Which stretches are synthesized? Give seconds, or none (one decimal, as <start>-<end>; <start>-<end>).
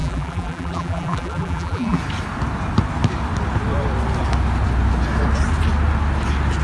0.0-2.0